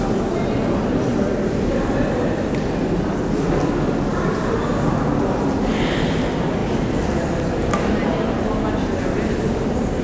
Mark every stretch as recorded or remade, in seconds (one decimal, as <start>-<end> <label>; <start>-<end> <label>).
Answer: 0.0-10.0 recorded